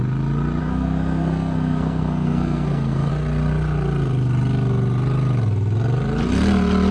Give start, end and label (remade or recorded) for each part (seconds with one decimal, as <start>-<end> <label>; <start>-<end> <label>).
0.0-0.6 recorded; 0.6-3.1 remade; 3.1-6.9 recorded